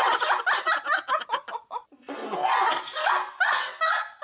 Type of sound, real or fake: real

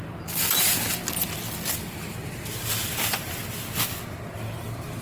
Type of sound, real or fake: real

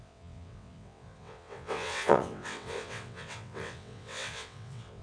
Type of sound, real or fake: fake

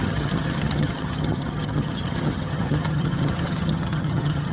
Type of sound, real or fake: fake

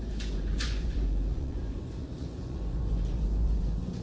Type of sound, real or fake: fake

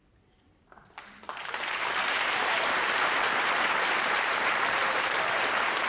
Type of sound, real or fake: fake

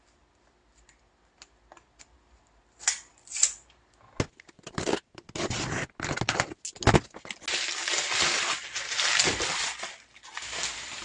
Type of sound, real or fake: real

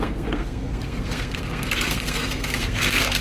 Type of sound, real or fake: fake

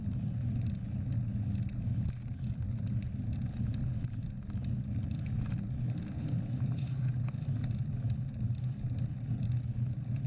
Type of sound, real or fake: real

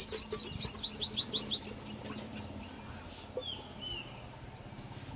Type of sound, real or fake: real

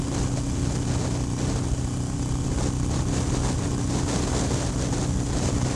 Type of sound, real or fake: real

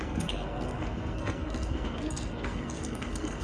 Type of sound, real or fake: fake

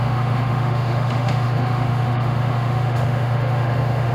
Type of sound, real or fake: fake